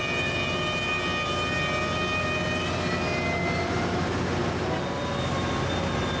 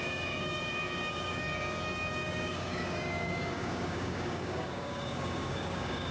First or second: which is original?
first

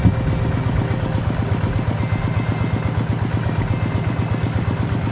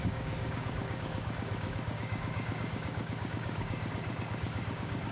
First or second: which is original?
first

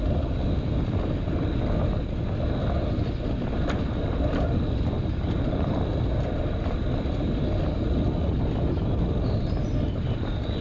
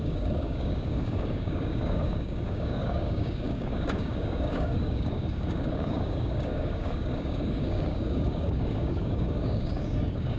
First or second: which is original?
first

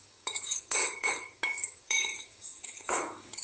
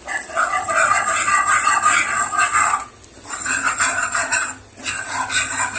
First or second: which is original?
second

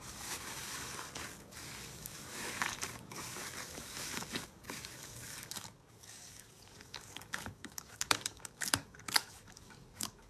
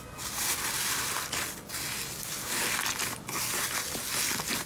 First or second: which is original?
second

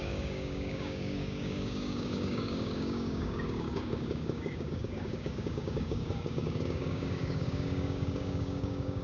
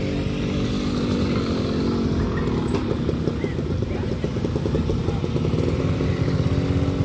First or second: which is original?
second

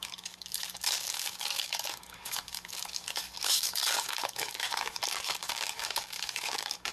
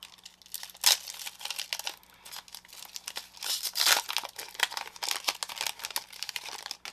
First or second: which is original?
second